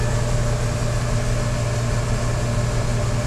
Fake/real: real